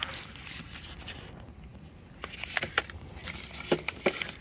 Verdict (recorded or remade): recorded